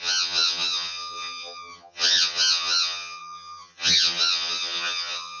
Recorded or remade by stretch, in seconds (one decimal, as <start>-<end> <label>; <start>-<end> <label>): 0.0-5.4 remade